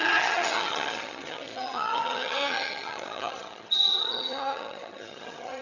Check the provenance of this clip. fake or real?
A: fake